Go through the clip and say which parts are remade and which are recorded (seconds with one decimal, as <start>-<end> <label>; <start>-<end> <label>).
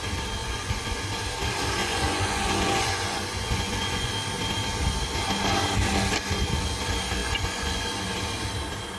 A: 0.0-0.4 recorded; 0.4-1.0 remade; 1.0-1.8 recorded; 1.8-4.1 remade; 4.1-7.2 recorded; 7.2-7.9 remade; 7.9-9.0 recorded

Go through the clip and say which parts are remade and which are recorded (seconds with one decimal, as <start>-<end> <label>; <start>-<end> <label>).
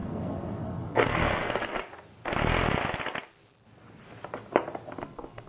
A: 0.0-1.7 remade; 1.7-5.0 recorded; 5.0-5.5 remade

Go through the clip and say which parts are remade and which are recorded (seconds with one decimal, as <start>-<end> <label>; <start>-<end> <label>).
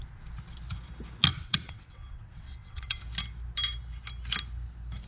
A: 0.0-1.3 recorded; 1.3-3.0 remade; 3.0-5.1 recorded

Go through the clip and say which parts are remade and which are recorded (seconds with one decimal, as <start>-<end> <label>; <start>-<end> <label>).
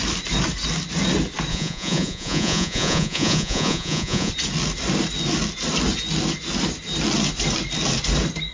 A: 0.0-1.5 recorded; 1.5-4.3 remade; 4.3-8.5 recorded